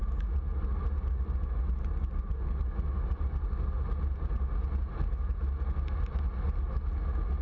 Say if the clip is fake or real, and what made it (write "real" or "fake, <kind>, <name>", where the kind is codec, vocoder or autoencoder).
real